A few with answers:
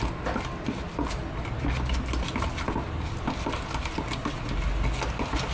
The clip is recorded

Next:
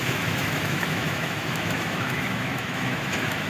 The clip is remade